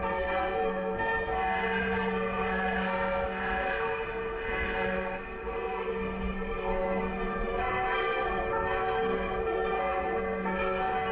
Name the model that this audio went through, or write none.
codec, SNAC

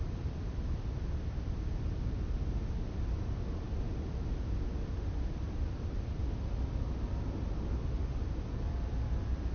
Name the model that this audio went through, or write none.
none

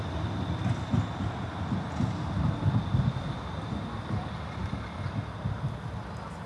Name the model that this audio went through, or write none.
none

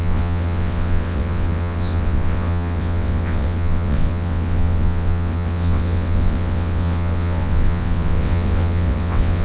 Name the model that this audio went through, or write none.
vocoder, WaveNeXt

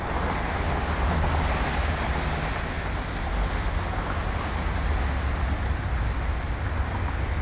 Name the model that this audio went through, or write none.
none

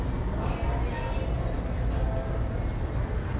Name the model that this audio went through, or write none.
none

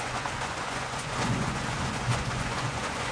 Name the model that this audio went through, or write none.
vocoder, Vocos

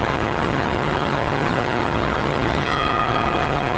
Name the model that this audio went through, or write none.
vocoder, HiFi-GAN